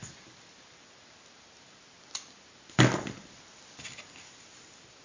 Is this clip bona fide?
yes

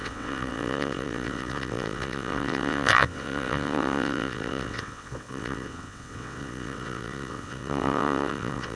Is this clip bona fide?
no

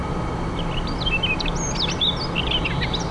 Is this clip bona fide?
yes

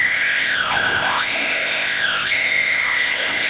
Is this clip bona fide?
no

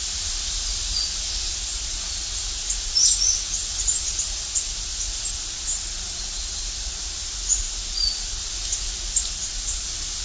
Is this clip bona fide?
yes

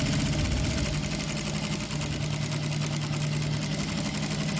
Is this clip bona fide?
yes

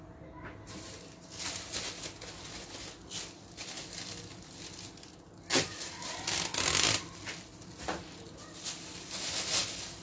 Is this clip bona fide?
yes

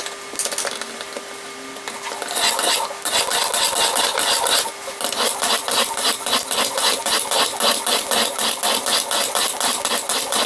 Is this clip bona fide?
yes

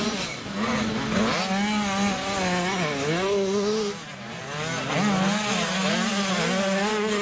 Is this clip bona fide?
yes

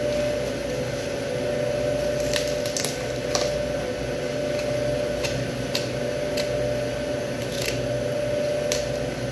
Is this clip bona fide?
yes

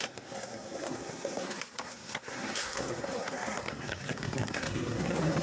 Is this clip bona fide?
no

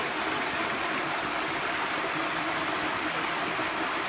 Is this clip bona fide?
yes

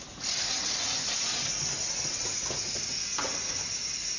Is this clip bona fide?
yes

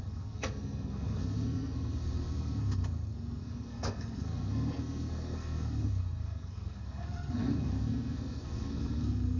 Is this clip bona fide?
no